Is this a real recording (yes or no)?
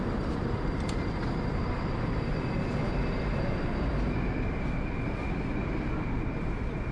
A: no